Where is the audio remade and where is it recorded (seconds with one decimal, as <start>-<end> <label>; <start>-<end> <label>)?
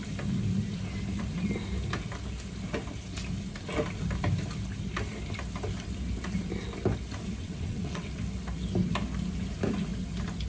0.0-7.4 recorded; 7.4-8.2 remade; 8.2-10.5 recorded